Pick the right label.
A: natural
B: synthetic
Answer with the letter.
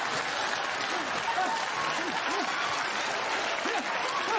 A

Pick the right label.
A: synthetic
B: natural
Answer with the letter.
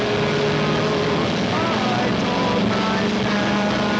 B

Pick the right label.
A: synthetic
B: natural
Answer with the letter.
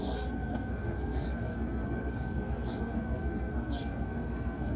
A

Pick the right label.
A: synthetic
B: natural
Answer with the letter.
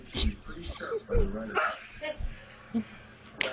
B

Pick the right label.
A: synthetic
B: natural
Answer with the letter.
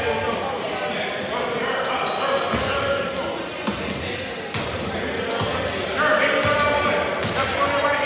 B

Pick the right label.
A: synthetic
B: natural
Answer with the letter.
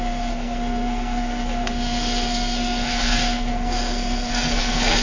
A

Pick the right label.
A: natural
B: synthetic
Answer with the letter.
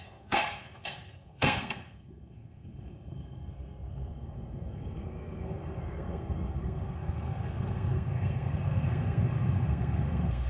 B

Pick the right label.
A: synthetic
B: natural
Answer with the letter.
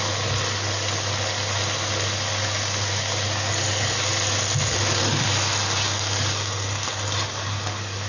B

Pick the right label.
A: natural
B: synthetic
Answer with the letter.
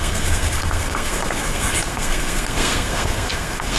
B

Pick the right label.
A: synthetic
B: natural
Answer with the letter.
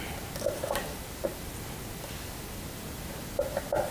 B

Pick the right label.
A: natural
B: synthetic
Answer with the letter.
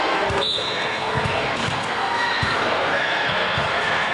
B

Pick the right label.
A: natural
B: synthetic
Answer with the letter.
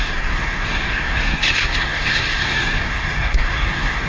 B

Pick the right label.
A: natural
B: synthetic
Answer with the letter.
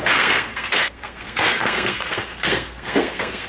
B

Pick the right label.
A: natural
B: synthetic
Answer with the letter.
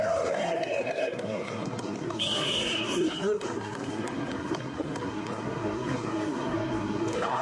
B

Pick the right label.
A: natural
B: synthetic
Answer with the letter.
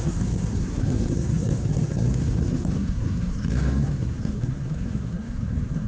B